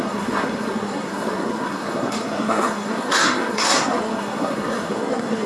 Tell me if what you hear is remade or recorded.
remade